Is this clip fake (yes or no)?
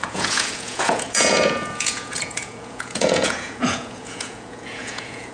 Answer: yes